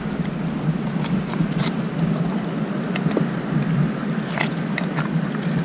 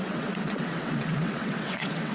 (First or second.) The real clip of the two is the first